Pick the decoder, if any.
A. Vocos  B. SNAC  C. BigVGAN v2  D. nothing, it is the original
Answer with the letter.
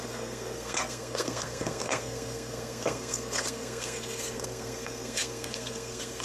B